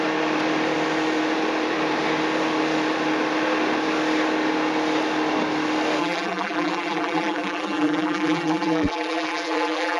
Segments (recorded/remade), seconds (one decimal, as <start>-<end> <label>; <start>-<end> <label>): 0.0-6.0 recorded; 6.0-10.0 remade